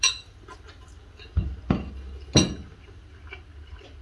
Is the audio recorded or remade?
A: recorded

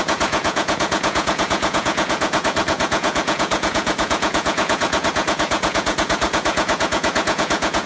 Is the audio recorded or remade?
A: remade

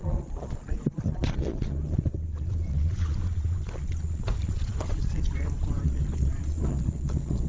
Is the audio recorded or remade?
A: remade